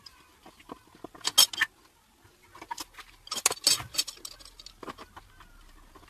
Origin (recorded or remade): recorded